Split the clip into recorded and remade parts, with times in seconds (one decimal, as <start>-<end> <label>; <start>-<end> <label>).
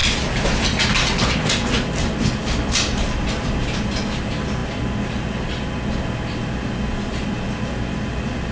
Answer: 0.0-8.5 recorded